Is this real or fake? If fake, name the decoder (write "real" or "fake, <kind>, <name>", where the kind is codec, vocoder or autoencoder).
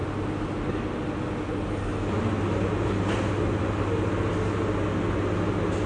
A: real